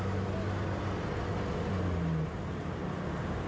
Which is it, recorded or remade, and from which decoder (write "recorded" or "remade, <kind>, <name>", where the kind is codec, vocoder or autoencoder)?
recorded